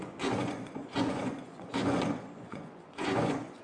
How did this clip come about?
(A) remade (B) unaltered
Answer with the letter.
A